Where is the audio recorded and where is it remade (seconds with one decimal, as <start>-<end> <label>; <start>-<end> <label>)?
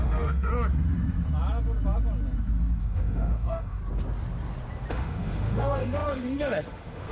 0.0-0.5 remade; 0.5-2.8 recorded; 2.8-3.8 remade; 3.8-4.9 recorded; 4.9-7.1 remade